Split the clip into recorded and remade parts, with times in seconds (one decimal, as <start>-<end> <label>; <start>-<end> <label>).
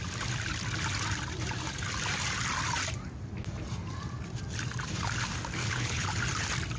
0.0-5.6 recorded; 5.6-6.2 remade; 6.2-6.8 recorded